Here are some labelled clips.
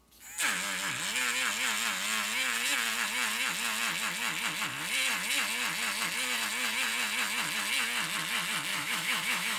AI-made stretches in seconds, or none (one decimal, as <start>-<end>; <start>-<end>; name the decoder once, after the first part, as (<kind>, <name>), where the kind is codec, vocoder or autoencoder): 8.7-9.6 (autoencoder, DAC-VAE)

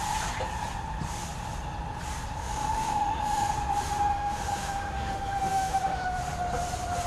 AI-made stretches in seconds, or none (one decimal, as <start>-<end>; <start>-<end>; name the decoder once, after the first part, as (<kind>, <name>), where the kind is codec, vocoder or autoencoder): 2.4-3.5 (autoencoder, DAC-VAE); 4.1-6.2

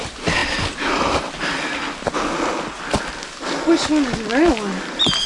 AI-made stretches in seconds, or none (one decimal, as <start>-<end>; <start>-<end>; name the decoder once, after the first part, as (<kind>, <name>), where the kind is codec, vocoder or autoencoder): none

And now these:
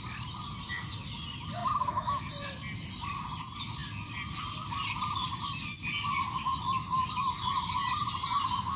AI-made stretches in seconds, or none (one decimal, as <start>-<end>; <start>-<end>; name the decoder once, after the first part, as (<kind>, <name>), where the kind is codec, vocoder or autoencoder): 1.6-2.2 (autoencoder, DAC-VAE)